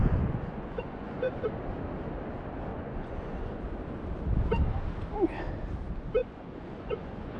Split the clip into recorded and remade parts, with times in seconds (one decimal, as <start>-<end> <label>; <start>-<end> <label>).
0.0-1.3 remade; 1.3-2.7 recorded; 2.7-3.6 remade; 3.6-6.2 recorded; 6.2-7.4 remade